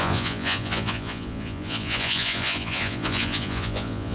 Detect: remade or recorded remade